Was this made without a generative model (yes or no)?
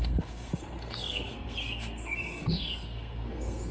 no